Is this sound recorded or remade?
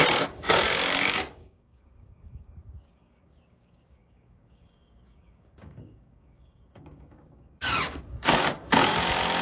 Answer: remade